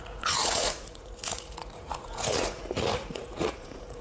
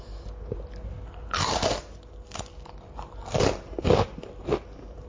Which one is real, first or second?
second